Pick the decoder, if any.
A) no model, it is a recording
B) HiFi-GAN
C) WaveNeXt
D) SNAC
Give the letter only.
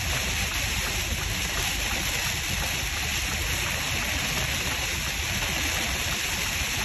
A